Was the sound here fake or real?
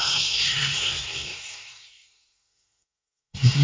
fake